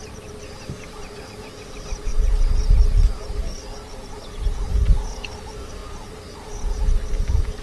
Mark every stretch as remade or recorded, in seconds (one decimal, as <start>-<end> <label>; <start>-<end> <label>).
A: 0.0-2.1 recorded; 2.1-2.6 remade; 2.6-5.8 recorded; 5.8-6.5 remade; 6.5-7.6 recorded